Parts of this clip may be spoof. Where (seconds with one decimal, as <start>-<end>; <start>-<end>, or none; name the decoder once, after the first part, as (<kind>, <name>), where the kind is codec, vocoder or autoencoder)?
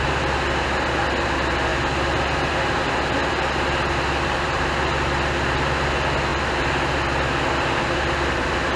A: none